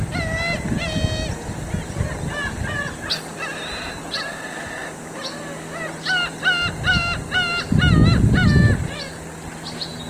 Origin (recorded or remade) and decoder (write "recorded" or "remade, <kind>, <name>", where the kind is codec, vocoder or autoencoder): recorded